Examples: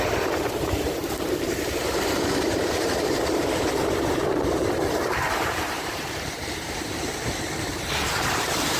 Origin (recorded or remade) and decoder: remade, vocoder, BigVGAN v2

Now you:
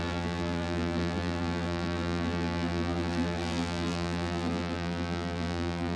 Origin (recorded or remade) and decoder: remade, vocoder, BigVGAN v2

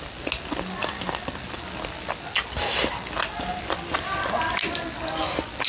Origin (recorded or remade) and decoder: recorded